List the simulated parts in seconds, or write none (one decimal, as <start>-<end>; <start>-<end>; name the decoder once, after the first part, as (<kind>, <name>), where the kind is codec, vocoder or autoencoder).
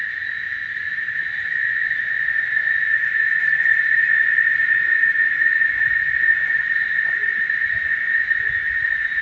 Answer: 1.8-2.8 (vocoder, Vocos); 4.4-8.4